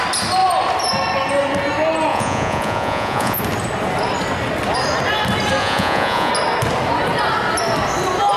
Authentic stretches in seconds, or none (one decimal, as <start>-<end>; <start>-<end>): 0.0-2.1; 3.4-5.6; 6.3-8.4